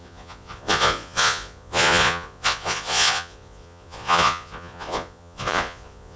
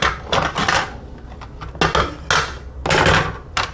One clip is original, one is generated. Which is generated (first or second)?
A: first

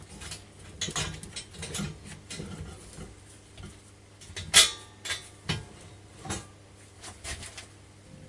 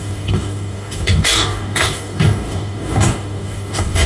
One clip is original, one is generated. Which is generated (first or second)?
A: second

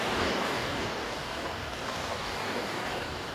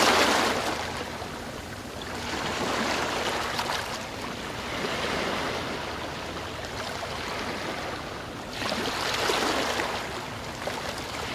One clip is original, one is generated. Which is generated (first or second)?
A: first